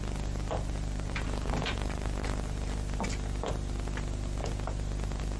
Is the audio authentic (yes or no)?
yes